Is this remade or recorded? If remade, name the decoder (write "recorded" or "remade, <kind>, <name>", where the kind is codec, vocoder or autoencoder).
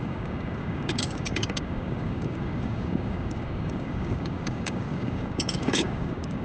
remade, codec, DAC